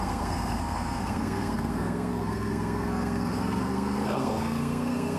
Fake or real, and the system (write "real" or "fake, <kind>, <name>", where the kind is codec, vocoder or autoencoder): fake, codec, SNAC